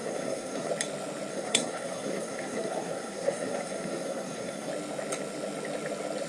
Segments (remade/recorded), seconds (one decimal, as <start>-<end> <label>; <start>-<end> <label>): 0.0-0.7 remade; 0.7-1.3 recorded; 1.3-4.7 remade; 4.7-6.3 recorded